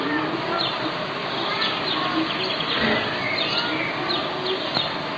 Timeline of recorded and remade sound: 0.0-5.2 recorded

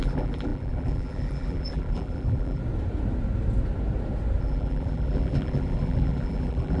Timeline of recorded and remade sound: 0.0-2.6 remade; 2.6-4.4 recorded; 4.4-6.8 remade